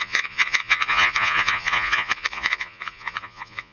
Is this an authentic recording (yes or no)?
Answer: no